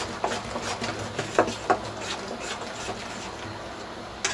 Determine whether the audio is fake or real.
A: real